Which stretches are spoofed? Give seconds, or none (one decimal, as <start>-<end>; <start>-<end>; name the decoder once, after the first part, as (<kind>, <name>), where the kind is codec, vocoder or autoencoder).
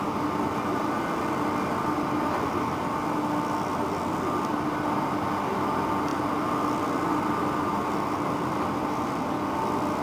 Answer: none